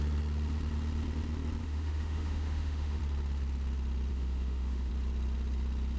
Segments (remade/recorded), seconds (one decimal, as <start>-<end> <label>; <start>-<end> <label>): 0.0-1.6 recorded; 1.6-3.0 remade; 3.0-4.1 recorded; 4.1-4.9 remade; 4.9-6.0 recorded